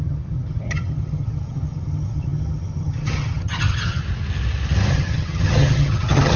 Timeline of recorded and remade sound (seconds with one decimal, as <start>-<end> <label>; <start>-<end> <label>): 0.0-4.0 remade; 4.0-4.9 recorded; 4.9-6.4 remade